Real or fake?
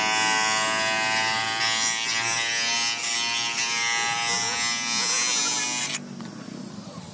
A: real